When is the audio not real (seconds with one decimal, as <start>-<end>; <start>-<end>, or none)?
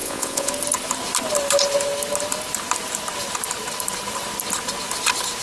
0.0-0.5